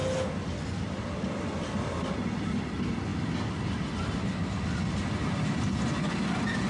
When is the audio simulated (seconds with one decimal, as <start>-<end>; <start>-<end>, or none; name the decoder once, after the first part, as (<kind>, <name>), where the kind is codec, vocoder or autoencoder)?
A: none